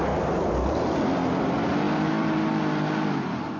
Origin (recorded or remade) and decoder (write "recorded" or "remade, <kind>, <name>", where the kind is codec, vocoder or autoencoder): recorded